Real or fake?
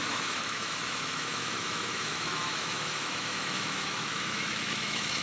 fake